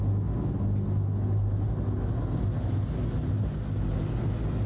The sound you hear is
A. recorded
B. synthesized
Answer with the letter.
A